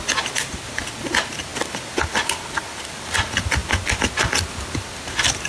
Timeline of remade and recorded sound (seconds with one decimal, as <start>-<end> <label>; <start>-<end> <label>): 0.0-5.5 recorded